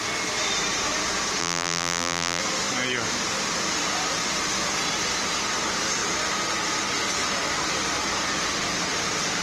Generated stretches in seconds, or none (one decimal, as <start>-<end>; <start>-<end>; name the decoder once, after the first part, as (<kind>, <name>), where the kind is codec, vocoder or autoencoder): 1.4-2.4 (vocoder, BigVGAN v2)